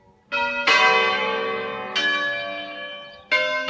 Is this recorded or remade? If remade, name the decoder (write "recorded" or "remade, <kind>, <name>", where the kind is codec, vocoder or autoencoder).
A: recorded